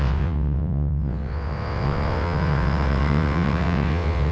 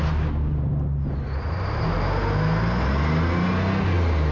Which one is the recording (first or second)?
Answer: second